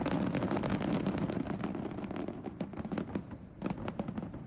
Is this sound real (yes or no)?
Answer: yes